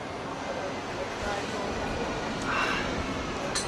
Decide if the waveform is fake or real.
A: real